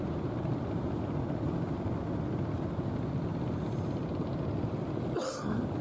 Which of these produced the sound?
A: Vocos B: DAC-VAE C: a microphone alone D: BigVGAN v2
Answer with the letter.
C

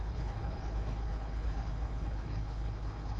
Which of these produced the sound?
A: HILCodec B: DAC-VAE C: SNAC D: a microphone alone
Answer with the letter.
A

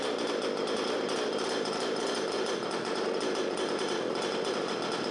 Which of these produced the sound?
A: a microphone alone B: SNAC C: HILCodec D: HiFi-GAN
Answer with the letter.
A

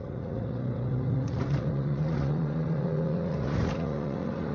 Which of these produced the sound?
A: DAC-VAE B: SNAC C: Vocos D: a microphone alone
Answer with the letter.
C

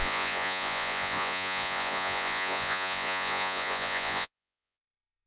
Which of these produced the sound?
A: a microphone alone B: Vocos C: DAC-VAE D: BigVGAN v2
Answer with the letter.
B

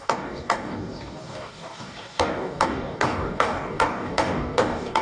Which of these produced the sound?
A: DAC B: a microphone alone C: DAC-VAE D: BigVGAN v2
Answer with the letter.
A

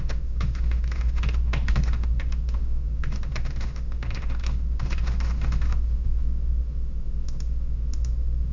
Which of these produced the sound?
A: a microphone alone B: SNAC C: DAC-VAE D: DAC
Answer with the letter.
C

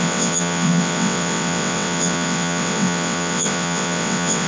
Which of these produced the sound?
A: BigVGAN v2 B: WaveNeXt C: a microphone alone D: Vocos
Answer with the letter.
B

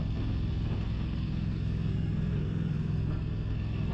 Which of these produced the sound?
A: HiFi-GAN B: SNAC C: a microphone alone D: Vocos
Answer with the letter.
B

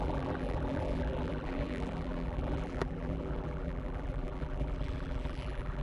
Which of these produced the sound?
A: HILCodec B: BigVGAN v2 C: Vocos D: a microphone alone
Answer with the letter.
B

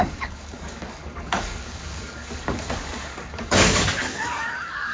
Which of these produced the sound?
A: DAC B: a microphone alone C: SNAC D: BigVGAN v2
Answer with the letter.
A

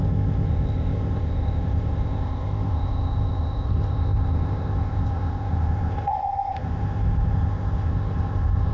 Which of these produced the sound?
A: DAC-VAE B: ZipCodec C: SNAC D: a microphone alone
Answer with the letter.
B